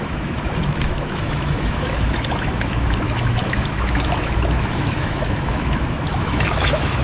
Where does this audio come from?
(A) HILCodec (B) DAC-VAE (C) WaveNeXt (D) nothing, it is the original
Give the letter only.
B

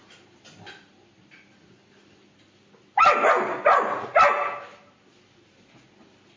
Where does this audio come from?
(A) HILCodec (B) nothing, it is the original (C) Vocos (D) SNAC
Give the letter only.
B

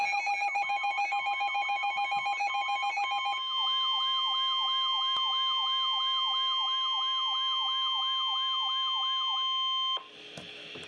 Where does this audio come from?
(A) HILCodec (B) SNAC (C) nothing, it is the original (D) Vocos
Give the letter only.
C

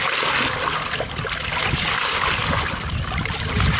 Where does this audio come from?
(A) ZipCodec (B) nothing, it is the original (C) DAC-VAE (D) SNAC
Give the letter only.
B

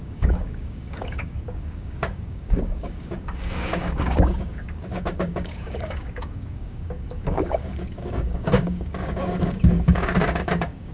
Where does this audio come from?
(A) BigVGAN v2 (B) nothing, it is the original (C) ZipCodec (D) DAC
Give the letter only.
D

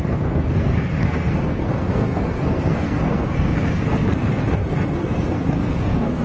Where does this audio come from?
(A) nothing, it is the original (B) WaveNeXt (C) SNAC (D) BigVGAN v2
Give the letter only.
C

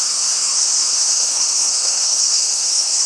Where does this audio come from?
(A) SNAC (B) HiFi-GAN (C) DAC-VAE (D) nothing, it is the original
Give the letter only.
A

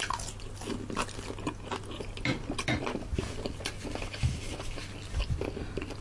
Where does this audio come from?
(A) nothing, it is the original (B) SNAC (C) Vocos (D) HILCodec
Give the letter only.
A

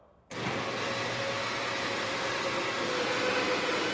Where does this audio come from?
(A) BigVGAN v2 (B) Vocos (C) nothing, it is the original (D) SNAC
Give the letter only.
C